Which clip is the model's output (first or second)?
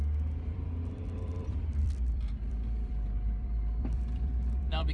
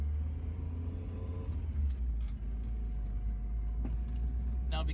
first